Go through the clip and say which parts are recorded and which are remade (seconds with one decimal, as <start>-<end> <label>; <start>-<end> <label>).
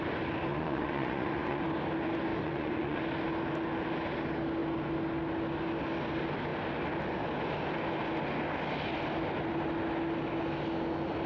0.0-0.5 recorded; 0.5-1.6 remade; 1.6-2.3 recorded; 2.3-3.0 remade; 3.0-11.3 recorded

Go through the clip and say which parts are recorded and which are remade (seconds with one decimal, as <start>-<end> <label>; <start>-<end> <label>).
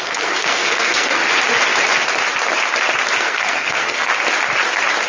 0.0-1.2 remade; 1.2-3.2 recorded; 3.2-4.1 remade; 4.1-5.1 recorded